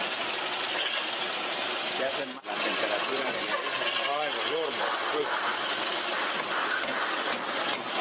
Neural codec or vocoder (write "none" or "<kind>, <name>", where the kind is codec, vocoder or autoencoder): none